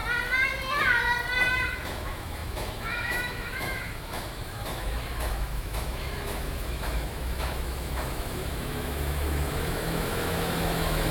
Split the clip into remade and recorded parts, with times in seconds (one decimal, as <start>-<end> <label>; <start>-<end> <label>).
0.0-1.5 recorded; 1.5-11.1 remade